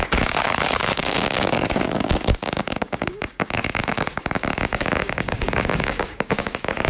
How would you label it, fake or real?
fake